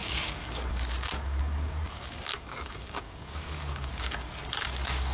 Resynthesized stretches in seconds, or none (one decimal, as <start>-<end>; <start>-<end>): 0.0-5.1